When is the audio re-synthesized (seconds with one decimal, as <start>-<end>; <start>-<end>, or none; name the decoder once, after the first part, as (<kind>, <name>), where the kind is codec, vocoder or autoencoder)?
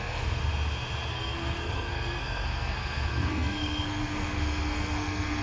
0.0-0.4 (codec, SNAC); 1.1-5.4